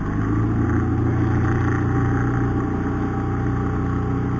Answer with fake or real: real